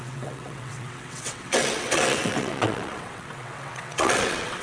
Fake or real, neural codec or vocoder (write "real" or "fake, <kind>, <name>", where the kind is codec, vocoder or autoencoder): fake, vocoder, WaveNeXt